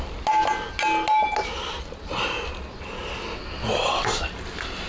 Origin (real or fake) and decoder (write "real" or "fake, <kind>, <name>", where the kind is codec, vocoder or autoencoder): real